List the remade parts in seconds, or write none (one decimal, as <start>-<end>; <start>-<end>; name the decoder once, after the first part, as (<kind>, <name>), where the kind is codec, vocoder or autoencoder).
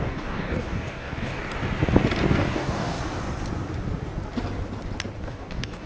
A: 0.0-1.4 (codec, DAC); 2.3-3.0; 5.2-5.9